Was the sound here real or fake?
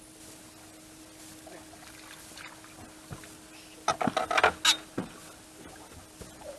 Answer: real